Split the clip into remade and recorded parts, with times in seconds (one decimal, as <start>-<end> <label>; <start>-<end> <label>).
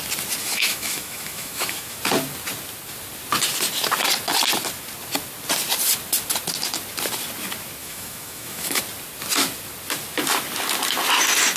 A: 0.0-0.4 recorded; 0.4-2.0 remade; 2.0-7.8 recorded; 7.8-8.8 remade; 8.8-11.6 recorded